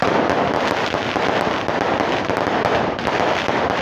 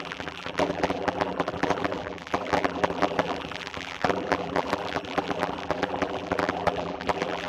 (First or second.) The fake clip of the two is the second